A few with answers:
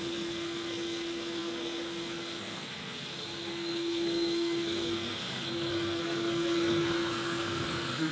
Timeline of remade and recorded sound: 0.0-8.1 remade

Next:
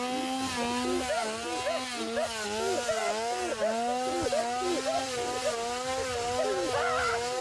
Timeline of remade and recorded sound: 0.0-7.4 recorded